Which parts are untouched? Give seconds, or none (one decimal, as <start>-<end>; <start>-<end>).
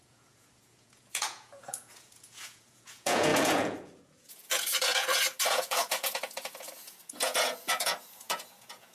none